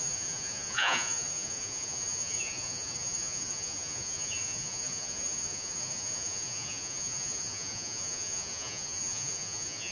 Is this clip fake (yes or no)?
yes